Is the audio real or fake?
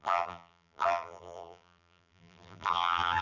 fake